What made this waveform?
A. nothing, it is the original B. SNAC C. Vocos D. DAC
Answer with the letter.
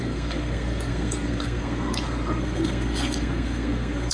B